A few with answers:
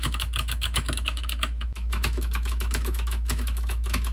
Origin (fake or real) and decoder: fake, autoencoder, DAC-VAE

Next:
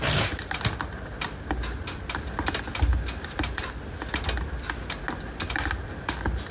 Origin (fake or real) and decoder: real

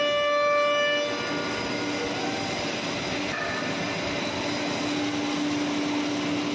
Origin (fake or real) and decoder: real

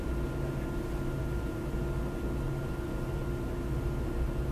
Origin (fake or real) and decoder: real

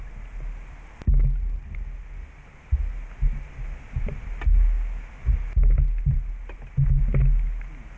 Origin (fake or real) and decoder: real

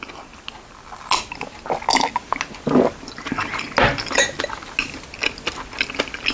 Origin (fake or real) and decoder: real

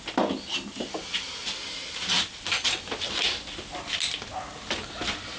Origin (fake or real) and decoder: real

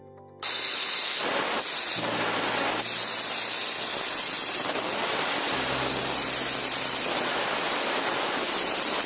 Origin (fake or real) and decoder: real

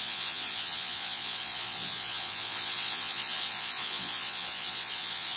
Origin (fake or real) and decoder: fake, vocoder, Vocos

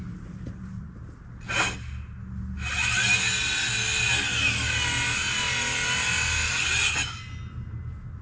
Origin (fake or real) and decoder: real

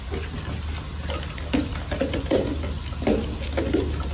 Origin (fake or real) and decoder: real